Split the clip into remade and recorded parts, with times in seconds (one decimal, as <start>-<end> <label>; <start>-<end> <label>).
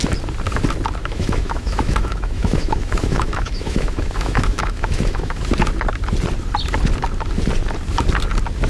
0.0-1.0 recorded; 1.0-5.4 remade; 5.4-8.7 recorded